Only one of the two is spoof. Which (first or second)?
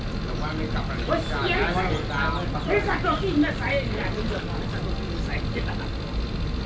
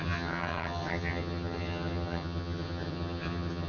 second